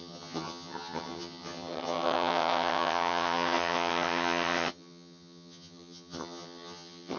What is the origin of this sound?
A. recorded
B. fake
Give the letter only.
B